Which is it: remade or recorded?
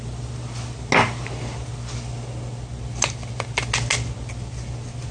recorded